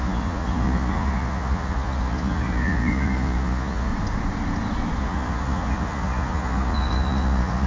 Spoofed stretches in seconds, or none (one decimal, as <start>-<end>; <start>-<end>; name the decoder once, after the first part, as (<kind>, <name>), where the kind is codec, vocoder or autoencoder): 0.0-3.9 (vocoder, Vocos); 5.0-7.7